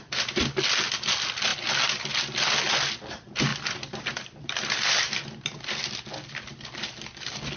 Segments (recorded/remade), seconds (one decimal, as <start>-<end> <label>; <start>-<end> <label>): 0.0-3.5 recorded; 3.5-5.1 remade; 5.1-7.6 recorded

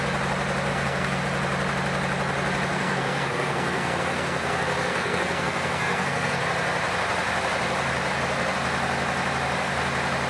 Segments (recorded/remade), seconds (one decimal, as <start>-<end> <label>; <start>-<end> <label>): 0.0-0.7 recorded; 0.7-1.2 remade; 1.2-2.7 recorded; 2.7-6.4 remade; 6.4-10.3 recorded

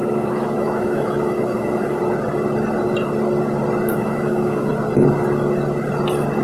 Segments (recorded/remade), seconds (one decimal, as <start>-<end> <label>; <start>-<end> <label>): 0.0-2.0 remade; 2.0-3.9 recorded; 3.9-4.7 remade; 4.7-6.4 recorded

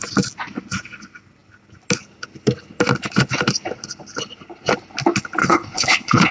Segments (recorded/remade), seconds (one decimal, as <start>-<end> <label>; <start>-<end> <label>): 0.0-5.4 recorded; 5.4-6.3 remade

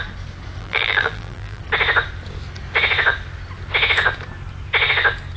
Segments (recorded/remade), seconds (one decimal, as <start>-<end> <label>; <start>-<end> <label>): 0.0-0.6 recorded; 0.6-1.6 remade; 1.6-5.4 recorded

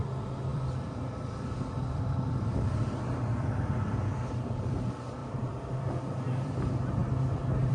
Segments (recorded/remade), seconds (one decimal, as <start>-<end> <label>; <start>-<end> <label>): 0.0-0.5 recorded; 0.5-4.8 remade; 4.8-5.2 recorded; 5.2-5.8 remade; 5.8-7.7 recorded